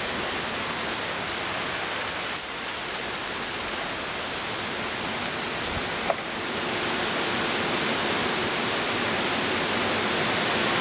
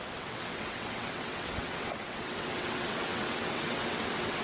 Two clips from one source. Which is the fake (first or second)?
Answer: second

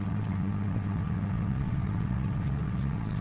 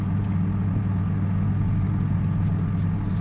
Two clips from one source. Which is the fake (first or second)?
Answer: first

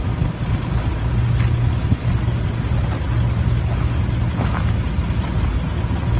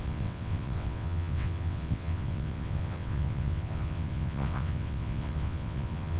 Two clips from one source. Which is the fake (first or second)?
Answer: second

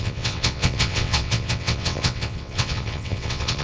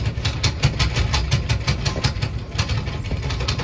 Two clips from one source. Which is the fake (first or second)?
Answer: first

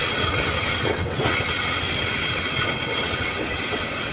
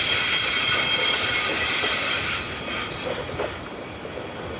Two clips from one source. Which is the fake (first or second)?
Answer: first